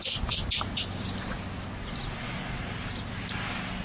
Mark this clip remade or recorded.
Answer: recorded